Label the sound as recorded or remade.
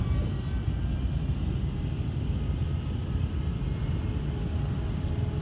recorded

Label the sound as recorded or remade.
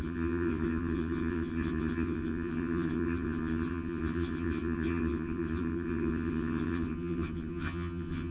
remade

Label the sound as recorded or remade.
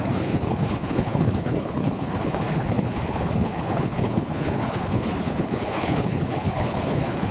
remade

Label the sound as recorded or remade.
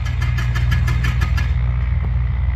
recorded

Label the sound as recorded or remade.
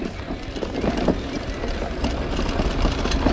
recorded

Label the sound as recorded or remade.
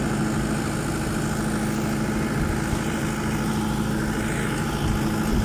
recorded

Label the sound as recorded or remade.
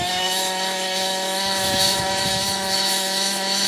remade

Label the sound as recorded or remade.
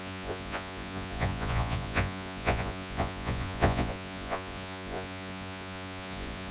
remade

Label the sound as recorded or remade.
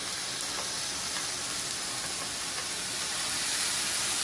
recorded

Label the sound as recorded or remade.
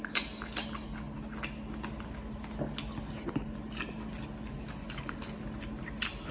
recorded